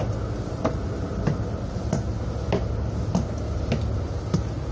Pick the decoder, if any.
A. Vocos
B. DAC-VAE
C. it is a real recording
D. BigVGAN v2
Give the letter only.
C